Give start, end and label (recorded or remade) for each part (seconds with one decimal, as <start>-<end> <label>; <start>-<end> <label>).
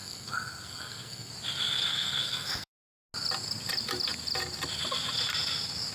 0.0-1.3 remade; 1.3-1.9 recorded; 1.9-2.8 remade; 2.8-5.9 recorded